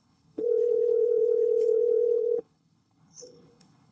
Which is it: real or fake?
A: fake